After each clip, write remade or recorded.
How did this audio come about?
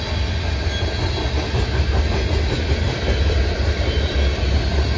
recorded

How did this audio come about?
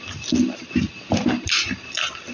recorded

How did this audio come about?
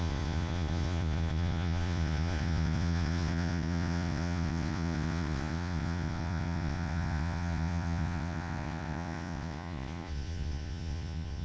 remade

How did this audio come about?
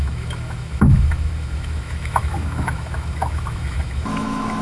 remade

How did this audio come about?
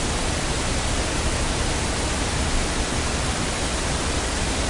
recorded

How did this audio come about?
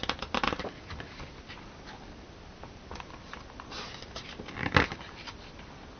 recorded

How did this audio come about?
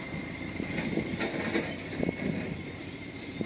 recorded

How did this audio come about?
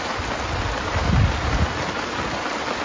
recorded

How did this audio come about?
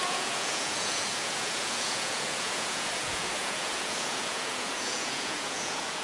remade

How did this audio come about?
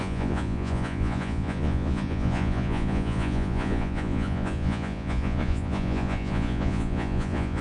remade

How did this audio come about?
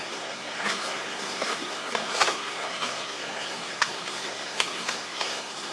remade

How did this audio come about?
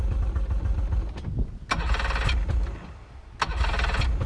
recorded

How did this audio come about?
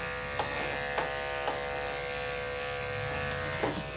recorded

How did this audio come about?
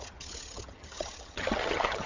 remade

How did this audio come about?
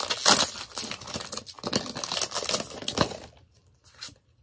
recorded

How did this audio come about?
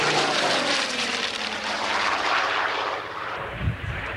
remade